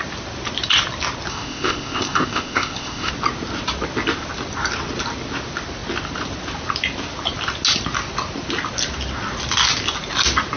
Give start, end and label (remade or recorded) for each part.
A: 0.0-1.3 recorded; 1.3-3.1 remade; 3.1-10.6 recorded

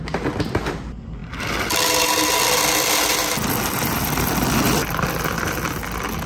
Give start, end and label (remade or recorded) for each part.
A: 0.0-6.3 recorded

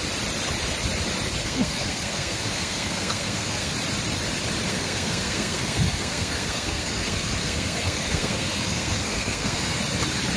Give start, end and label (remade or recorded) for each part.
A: 0.0-1.4 recorded; 1.4-3.7 remade; 3.7-4.7 recorded; 4.7-9.8 remade; 9.8-10.4 recorded

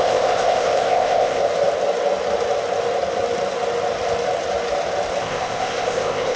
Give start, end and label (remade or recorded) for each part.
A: 0.0-1.4 remade; 1.4-5.2 recorded; 5.2-6.4 remade